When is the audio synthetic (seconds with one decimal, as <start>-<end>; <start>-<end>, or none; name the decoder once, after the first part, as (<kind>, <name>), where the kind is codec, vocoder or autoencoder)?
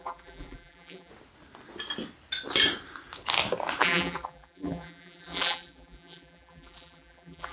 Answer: 0.0-1.1 (vocoder, BigVGAN v2); 3.8-7.5